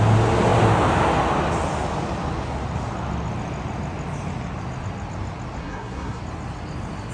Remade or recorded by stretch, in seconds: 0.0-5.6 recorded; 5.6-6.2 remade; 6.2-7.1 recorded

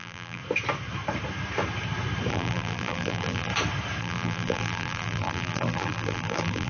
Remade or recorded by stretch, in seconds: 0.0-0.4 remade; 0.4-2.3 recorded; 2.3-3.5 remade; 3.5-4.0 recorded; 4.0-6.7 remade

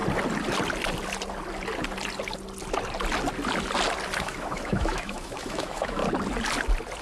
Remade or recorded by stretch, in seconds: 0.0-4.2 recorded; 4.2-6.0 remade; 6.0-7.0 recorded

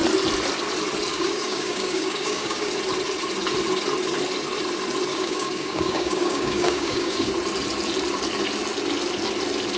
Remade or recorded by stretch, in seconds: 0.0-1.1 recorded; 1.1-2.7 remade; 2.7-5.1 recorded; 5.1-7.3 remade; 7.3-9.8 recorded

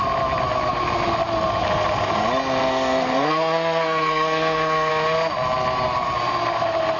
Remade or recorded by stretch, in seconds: 0.0-2.6 recorded; 2.6-4.9 remade; 4.9-7.0 recorded

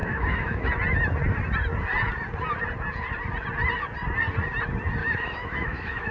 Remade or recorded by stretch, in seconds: 0.0-0.7 remade; 0.7-5.0 recorded; 5.0-6.1 remade

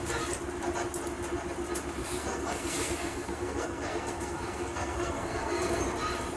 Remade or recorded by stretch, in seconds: 0.0-2.0 recorded; 2.0-5.8 remade; 5.8-6.4 recorded

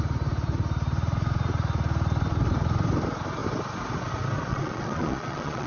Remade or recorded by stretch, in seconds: 0.0-4.5 recorded; 4.5-5.7 remade